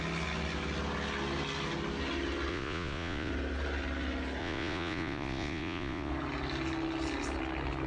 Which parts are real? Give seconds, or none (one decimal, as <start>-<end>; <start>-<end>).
0.0-2.5; 3.3-4.4; 6.1-7.9